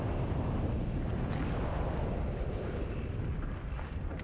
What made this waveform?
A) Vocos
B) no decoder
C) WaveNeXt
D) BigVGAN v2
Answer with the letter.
B